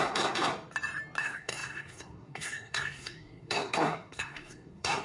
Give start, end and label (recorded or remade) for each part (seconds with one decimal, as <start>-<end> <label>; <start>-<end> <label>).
0.0-0.5 remade; 0.5-1.2 recorded; 1.2-5.0 remade